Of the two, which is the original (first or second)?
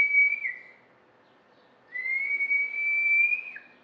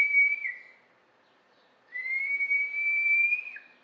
first